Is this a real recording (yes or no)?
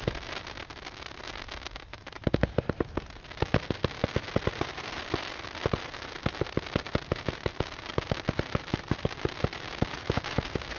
yes